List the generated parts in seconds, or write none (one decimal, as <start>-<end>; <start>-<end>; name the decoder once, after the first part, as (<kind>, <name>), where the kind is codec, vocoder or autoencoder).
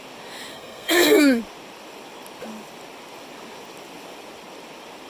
0.5-1.4 (codec, SNAC)